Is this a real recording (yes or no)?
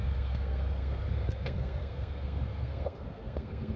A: no